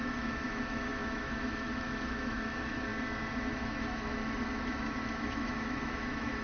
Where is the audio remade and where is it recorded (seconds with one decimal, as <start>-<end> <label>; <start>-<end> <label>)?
0.0-2.9 remade; 2.9-3.5 recorded; 3.5-6.4 remade